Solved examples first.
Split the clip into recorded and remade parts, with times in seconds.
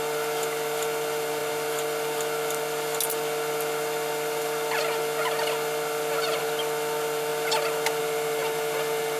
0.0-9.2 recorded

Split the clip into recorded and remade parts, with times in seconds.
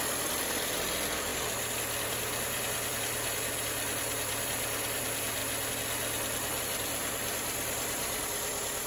0.0-1.3 remade; 1.3-2.1 recorded; 2.1-5.4 remade; 5.4-6.6 recorded; 6.6-8.9 remade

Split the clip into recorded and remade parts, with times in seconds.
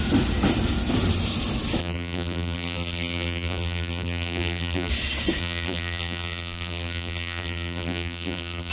0.0-1.8 recorded; 1.8-4.9 remade; 4.9-5.4 recorded; 5.4-8.7 remade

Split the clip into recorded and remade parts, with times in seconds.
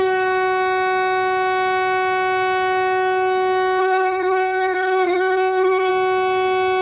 0.0-3.8 recorded; 3.8-5.9 remade; 5.9-6.8 recorded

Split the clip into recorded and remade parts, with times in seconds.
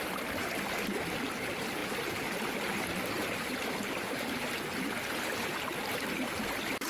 0.0-6.9 recorded